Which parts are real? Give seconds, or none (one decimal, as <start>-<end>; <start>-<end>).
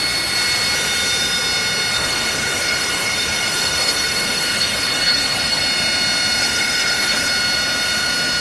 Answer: 0.0-1.9; 5.6-6.4; 7.3-8.4